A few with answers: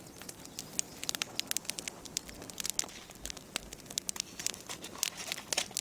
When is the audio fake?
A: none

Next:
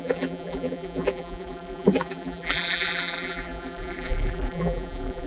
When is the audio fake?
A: 0.0-5.3 (vocoder, BigVGAN v2)

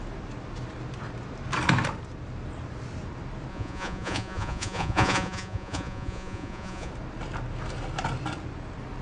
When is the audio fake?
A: 3.5-6.9 (vocoder, Vocos)

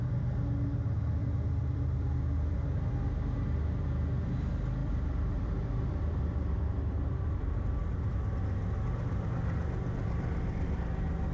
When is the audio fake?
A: 1.2-2.9 (vocoder, BigVGAN v2); 4.8-8.1

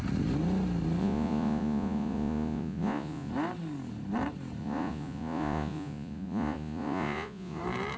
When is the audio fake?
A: 1.0-3.3 (vocoder, Vocos); 4.6-7.6